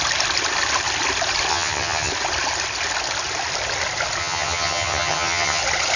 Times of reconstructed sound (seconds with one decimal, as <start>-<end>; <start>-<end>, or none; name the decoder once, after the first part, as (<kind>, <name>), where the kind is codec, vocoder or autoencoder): 1.5-2.1 (vocoder, HiFi-GAN); 4.2-5.6